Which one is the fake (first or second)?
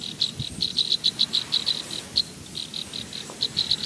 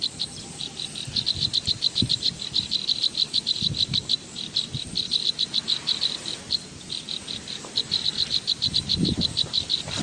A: second